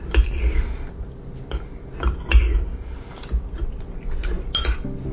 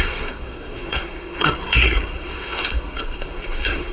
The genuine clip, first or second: first